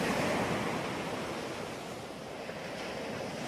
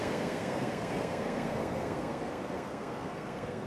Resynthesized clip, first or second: second